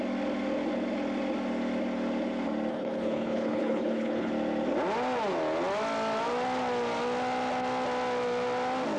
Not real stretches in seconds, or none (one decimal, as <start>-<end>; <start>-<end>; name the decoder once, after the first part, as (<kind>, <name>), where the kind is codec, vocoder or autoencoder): 2.7-4.3 (codec, HILCodec)